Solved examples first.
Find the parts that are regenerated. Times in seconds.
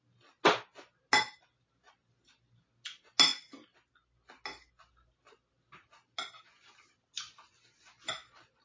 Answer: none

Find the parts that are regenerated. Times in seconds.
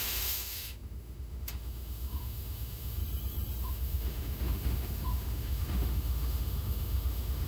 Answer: 0.0-3.0; 3.6-7.5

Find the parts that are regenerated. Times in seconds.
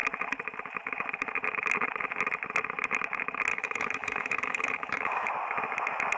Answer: 3.5-5.3